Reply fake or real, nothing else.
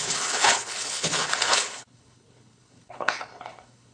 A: fake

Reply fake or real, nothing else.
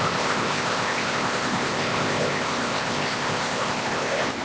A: fake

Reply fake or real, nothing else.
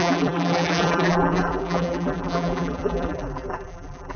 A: fake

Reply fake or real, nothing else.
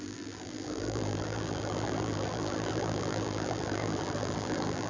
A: fake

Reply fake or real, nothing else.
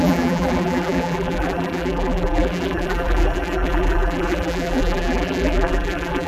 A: fake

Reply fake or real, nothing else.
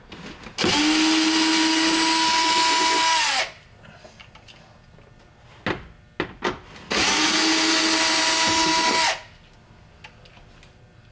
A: real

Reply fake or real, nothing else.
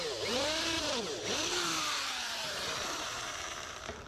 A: fake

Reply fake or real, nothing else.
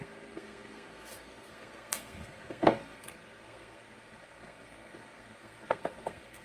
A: fake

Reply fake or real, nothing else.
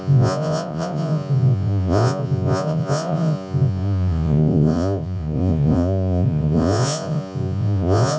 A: fake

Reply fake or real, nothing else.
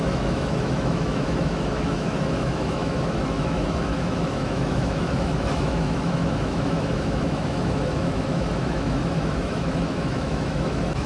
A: fake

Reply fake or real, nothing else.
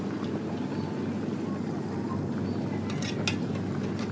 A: real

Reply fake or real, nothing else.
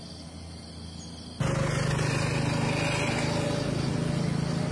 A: real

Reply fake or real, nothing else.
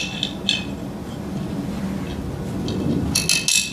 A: real